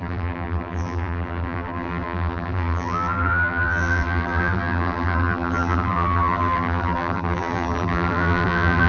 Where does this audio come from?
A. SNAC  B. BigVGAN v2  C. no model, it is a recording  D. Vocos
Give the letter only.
B